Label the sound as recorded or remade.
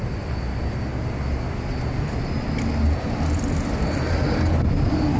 recorded